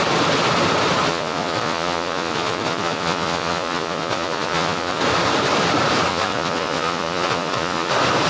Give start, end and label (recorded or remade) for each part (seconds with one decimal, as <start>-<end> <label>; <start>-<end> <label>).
0.0-1.1 recorded; 1.1-5.0 remade; 5.0-6.1 recorded; 6.1-7.9 remade; 7.9-8.3 recorded